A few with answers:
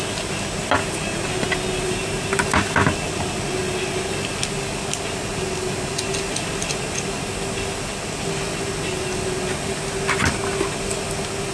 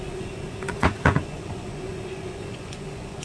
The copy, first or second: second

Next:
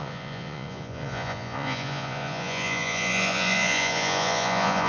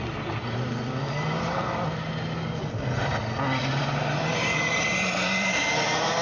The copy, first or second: first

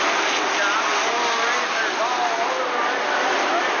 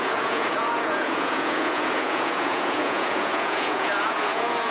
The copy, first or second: second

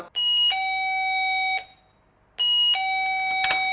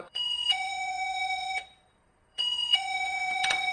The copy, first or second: second